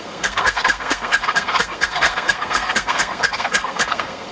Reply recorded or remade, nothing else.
remade